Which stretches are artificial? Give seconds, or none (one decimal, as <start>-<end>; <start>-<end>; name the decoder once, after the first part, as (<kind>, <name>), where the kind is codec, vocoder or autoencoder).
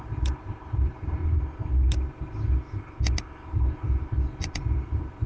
0.0-1.2 (vocoder, BigVGAN v2); 4.4-5.3